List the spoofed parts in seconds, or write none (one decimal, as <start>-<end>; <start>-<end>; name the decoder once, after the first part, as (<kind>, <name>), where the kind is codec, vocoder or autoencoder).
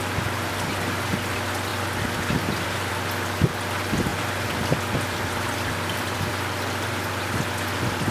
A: 1.7-2.9 (vocoder, BigVGAN v2); 4.1-6.3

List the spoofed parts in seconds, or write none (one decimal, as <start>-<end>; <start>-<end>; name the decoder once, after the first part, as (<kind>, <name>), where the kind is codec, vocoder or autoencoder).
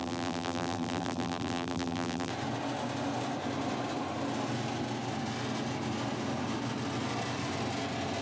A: 0.0-2.3 (vocoder, BigVGAN v2)